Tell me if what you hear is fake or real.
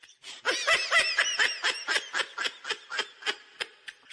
real